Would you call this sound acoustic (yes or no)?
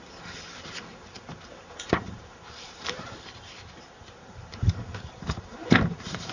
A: no